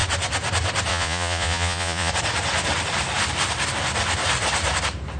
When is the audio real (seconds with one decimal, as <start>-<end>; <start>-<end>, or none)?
0.0-0.9; 2.1-5.2

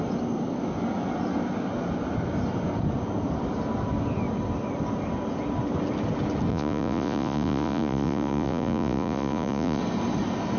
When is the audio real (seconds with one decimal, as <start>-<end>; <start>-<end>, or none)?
0.0-6.5; 9.8-10.6

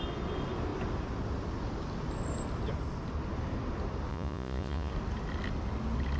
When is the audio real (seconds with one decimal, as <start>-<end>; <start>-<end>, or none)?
0.0-4.1; 4.9-6.2

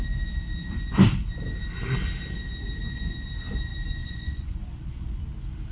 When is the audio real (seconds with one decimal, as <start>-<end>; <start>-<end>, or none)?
0.0-4.0; 5.2-5.7

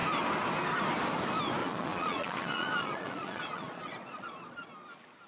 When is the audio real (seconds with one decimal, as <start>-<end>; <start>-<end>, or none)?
0.0-1.6; 4.7-5.3

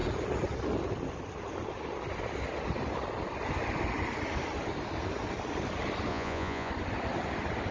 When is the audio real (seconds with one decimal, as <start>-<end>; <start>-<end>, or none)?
0.0-6.1; 6.7-7.7

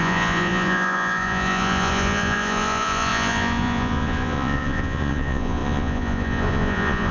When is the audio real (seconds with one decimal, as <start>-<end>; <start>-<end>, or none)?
none